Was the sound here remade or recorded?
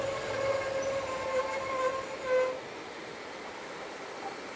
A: recorded